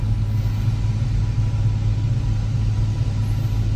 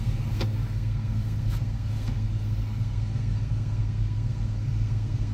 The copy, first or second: second